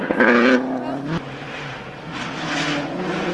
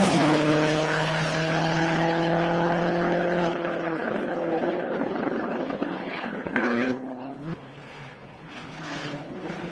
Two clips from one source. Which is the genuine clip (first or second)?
first